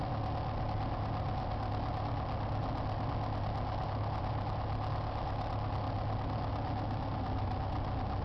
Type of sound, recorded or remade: recorded